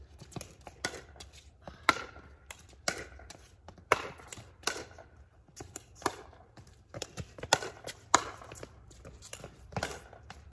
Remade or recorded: remade